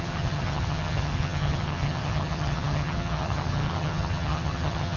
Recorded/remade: remade